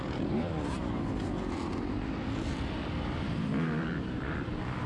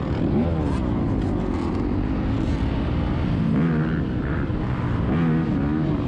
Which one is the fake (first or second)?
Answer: first